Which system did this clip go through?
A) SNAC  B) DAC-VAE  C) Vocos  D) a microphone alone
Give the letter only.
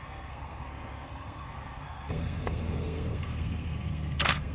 A